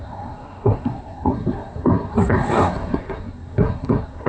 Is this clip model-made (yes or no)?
yes